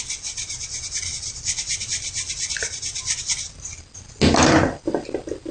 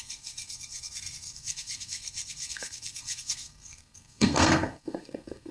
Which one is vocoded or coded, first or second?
second